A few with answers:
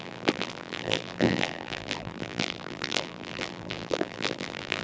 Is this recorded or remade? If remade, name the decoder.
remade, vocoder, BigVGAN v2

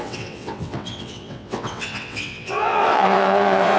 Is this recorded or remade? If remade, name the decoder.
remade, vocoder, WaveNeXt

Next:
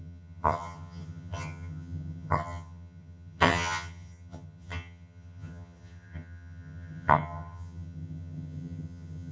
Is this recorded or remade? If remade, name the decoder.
remade, vocoder, HiFi-GAN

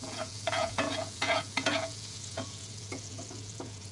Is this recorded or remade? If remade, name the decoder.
remade, vocoder, Vocos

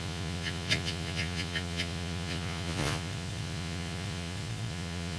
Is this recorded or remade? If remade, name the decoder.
remade, vocoder, Vocos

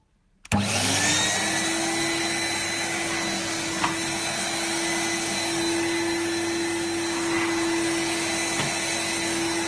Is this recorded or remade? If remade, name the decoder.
recorded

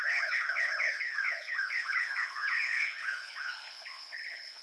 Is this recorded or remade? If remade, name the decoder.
remade, codec, HILCodec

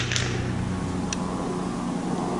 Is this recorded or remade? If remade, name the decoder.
recorded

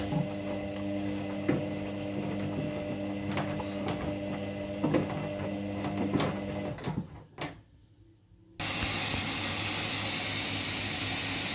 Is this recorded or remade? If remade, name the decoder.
recorded